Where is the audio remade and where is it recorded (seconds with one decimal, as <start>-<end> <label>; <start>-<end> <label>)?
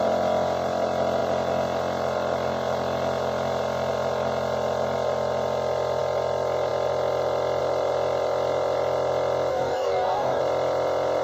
0.0-9.5 recorded; 9.5-10.4 remade; 10.4-11.2 recorded